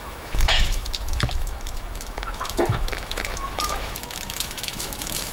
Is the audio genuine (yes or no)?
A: no